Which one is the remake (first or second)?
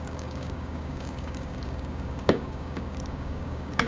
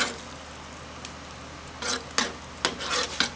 first